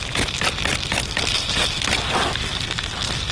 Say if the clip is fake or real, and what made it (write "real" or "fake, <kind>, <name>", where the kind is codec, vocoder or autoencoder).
real